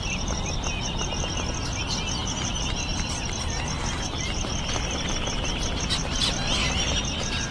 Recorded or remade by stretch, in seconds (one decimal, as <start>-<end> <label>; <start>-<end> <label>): 0.0-2.2 recorded; 2.2-6.7 remade; 6.7-7.5 recorded